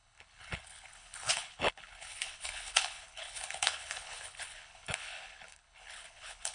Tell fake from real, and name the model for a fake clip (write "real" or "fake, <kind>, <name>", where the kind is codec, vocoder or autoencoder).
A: fake, codec, HILCodec